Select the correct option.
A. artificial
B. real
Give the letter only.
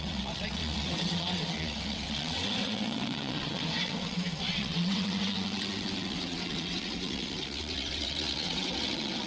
A